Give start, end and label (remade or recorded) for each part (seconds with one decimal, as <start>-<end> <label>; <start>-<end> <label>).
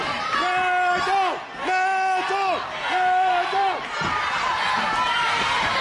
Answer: 0.0-0.4 remade; 0.4-2.9 recorded; 2.9-5.8 remade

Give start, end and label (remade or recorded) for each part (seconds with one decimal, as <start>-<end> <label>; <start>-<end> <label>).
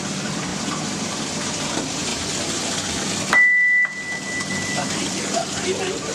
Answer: 0.0-2.1 remade; 2.1-4.5 recorded; 4.5-6.1 remade